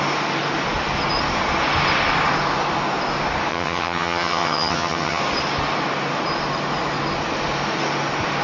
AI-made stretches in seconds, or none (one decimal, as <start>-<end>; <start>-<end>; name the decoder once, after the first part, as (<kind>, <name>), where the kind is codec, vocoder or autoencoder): 3.5-5.2 (vocoder, HiFi-GAN)